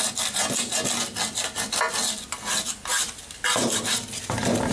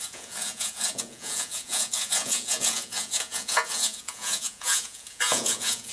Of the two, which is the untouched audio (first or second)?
first